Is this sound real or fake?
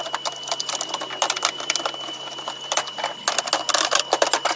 real